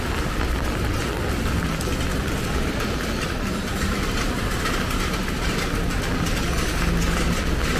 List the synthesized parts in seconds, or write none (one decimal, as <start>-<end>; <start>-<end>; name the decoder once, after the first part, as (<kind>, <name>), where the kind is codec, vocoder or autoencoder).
none